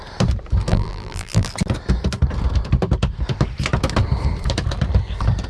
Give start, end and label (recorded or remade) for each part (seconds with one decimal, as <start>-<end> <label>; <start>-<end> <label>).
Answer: 0.0-0.7 recorded; 0.7-1.5 remade; 1.5-5.5 recorded